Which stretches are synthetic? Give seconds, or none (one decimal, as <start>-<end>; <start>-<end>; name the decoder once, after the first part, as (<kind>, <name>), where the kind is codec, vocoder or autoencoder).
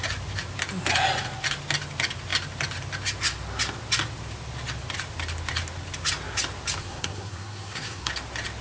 6.8-8.1 (codec, SNAC)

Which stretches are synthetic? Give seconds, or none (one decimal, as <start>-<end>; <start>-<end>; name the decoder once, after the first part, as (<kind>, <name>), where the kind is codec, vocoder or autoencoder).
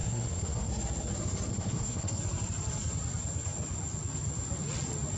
0.0-0.7 (codec, SNAC); 1.5-2.2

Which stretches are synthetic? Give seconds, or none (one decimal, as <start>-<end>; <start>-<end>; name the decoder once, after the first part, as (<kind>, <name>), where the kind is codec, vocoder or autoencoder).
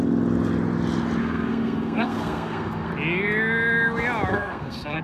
1.2-2.9 (codec, SNAC); 4.3-5.0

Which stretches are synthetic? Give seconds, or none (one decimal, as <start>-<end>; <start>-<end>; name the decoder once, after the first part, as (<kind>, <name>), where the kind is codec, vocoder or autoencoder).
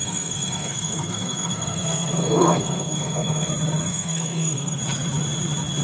0.0-3.5 (codec, SNAC); 3.9-4.8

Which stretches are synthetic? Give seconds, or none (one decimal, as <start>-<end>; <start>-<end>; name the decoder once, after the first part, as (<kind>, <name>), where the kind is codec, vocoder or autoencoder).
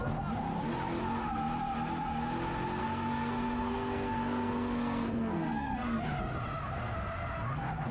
2.8-6.0 (codec, SNAC)